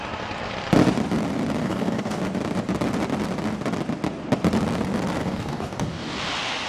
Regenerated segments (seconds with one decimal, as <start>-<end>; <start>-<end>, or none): 1.6-2.2; 5.2-6.1